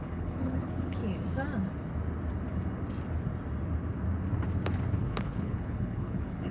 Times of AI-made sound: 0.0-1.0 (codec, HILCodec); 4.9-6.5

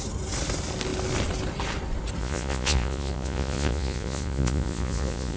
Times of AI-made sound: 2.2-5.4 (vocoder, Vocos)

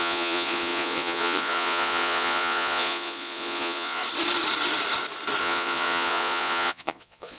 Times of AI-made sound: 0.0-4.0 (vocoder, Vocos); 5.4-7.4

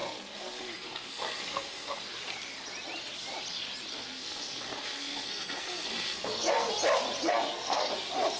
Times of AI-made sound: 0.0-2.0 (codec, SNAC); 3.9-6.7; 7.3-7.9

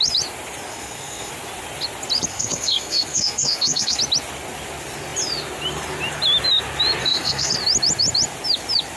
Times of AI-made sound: 0.7-1.3 (codec, SNAC); 2.3-4.0; 7.0-7.5

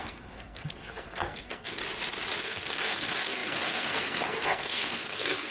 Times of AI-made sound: 0.0-1.8 (codec, SNAC); 2.4-5.5

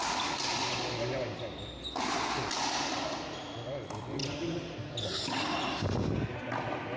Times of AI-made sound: none